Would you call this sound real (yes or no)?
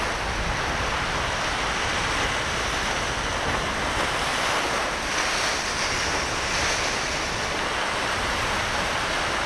yes